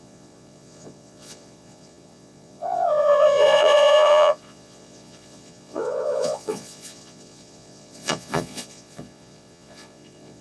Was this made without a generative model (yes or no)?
no